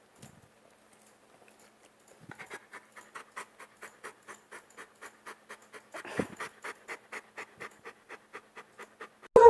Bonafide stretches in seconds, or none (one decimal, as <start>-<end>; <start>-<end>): 0.0-9.5